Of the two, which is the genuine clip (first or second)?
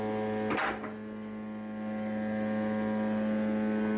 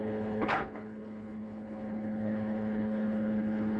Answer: first